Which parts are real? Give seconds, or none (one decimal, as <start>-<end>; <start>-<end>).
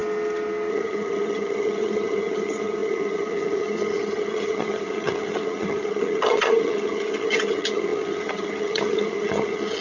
0.0-0.7